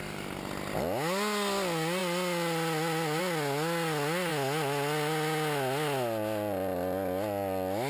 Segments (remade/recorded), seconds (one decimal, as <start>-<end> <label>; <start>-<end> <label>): 0.0-7.9 recorded